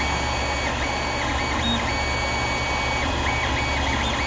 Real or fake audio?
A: real